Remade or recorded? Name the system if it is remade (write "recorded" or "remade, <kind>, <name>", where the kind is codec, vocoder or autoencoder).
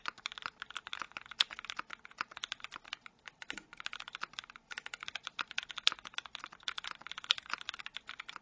recorded